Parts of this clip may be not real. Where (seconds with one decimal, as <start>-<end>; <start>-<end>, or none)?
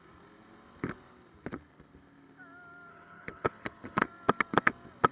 2.9-4.0